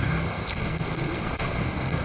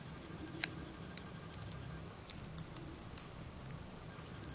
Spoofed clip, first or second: first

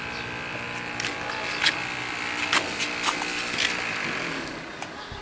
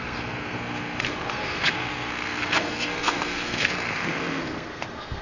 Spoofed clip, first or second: second